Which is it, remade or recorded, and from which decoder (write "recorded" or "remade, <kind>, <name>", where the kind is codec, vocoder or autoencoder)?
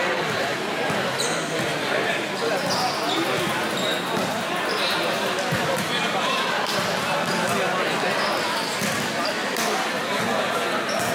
recorded